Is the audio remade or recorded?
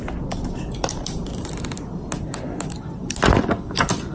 recorded